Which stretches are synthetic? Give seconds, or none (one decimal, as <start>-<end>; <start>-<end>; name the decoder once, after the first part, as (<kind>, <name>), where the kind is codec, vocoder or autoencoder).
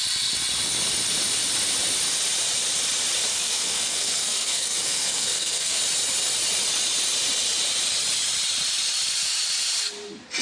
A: 3.3-5.8 (codec, SNAC)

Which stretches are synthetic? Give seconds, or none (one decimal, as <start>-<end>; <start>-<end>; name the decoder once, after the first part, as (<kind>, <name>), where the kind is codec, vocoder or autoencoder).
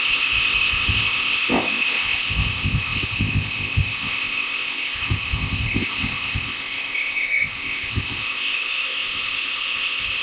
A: 0.0-10.2 (codec, ZipCodec)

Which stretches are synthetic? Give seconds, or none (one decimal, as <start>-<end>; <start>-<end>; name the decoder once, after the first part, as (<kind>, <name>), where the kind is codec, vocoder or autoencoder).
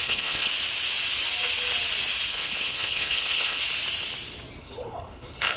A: 0.0-0.5 (codec, HILCodec); 2.3-3.6; 4.6-5.6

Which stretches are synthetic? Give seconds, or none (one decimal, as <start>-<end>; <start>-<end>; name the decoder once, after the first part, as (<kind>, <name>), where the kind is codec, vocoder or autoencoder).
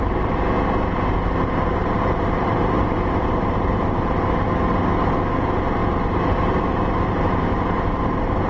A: 1.8-4.0 (vocoder, BigVGAN v2); 5.8-8.5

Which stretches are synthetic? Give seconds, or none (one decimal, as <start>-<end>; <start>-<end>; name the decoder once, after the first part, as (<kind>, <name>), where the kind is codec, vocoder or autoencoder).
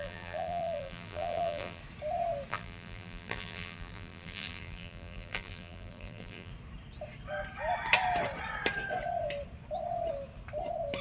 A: 0.0-1.8 (vocoder, BigVGAN v2); 2.5-6.5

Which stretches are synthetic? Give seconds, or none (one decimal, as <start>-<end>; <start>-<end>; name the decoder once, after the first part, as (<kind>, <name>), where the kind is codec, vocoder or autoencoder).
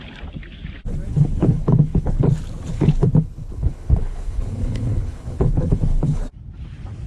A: 1.1-2.3 (codec, HILCodec); 2.7-6.2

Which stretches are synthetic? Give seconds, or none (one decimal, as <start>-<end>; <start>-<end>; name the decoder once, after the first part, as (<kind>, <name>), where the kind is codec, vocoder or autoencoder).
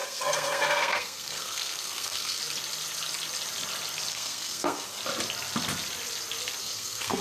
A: 0.0-2.4 (codec, SNAC); 4.1-5.0; 6.6-7.2